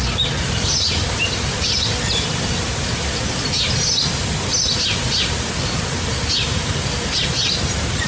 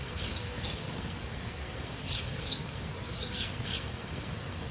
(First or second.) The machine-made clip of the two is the second